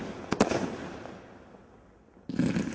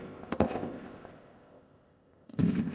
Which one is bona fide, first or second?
first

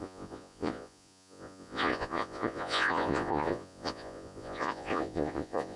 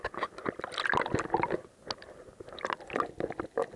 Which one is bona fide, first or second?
second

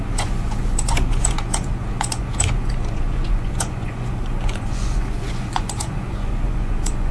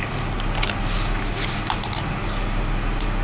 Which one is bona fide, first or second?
second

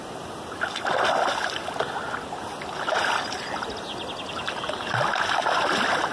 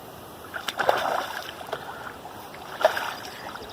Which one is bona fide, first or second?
first